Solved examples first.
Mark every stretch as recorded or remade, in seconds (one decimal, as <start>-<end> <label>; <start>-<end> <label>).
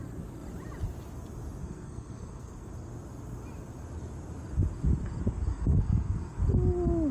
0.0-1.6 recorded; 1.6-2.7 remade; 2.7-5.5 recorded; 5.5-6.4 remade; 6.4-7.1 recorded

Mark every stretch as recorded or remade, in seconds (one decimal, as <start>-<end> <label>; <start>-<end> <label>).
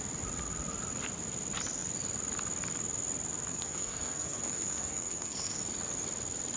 0.0-3.5 recorded; 3.5-5.6 remade; 5.6-6.6 recorded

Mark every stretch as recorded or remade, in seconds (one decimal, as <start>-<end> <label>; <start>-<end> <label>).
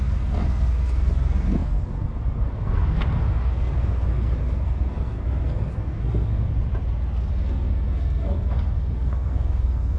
0.0-6.5 remade; 6.5-7.3 recorded; 7.3-10.0 remade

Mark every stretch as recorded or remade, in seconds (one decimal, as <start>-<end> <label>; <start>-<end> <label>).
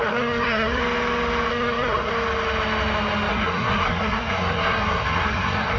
0.0-0.8 remade; 0.8-1.5 recorded; 1.5-2.1 remade; 2.1-3.3 recorded; 3.3-5.8 remade